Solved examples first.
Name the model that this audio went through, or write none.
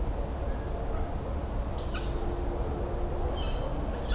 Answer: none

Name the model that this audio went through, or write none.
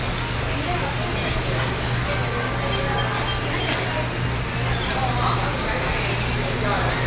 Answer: none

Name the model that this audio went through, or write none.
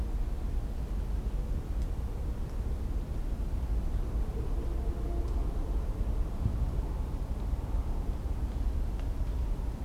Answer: none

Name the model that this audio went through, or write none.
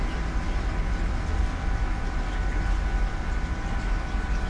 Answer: none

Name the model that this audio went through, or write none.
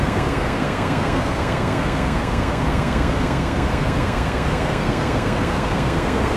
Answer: codec, SNAC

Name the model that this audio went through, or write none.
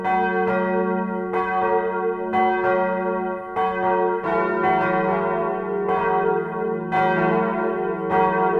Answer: none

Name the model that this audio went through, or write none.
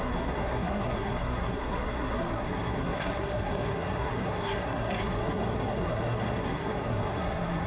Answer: codec, SNAC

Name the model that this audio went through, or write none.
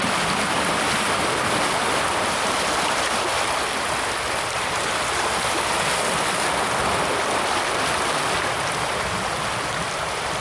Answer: none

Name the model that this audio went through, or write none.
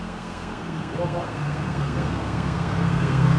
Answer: codec, SNAC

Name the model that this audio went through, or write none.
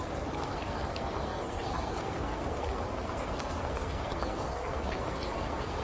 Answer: codec, SNAC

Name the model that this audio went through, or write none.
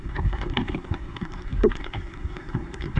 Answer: codec, SNAC